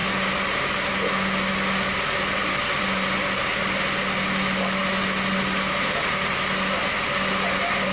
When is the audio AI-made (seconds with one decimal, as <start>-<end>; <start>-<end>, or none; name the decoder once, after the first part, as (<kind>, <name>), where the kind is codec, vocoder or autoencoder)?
none